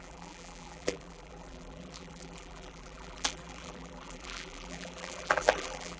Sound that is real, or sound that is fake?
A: fake